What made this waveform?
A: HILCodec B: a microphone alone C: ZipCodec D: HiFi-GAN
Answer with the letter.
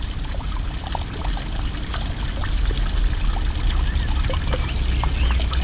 B